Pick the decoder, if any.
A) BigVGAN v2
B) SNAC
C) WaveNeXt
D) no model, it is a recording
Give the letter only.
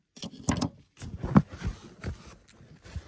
D